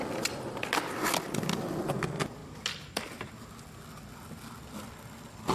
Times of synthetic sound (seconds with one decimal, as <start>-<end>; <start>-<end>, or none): none

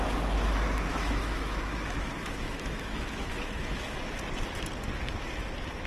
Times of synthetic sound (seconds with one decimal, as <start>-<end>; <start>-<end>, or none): 0.9-4.1

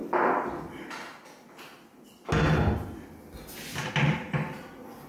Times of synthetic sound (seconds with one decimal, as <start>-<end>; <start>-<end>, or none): none

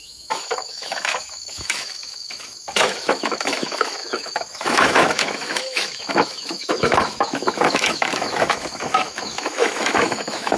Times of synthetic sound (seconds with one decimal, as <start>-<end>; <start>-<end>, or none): 0.0-10.6